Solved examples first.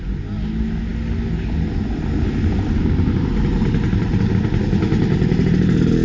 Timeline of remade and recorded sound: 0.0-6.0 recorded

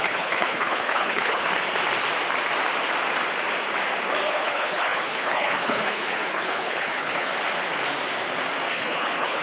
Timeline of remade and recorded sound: 0.0-1.5 remade; 1.5-4.3 recorded; 4.3-7.3 remade; 7.3-8.7 recorded; 8.7-9.4 remade

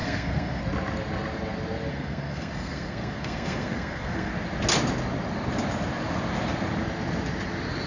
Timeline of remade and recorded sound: 0.0-0.6 remade; 0.6-1.9 recorded; 1.9-4.3 remade; 4.3-7.9 recorded